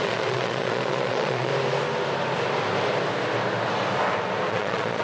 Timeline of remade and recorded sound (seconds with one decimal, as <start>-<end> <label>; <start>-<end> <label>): 0.0-1.5 remade; 1.5-4.5 recorded; 4.5-5.0 remade